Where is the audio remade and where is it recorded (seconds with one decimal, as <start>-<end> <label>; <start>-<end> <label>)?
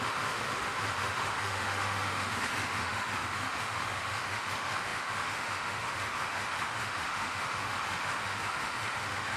0.0-9.4 remade